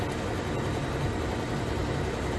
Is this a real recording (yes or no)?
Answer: yes